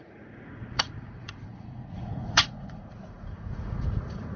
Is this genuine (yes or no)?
no